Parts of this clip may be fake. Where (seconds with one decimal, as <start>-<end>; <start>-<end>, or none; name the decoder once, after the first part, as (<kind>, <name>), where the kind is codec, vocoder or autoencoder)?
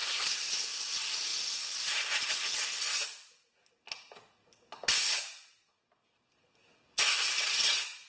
0.0-0.5 (codec, SNAC)